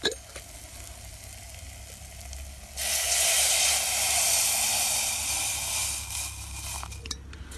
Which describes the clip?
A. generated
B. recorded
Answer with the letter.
B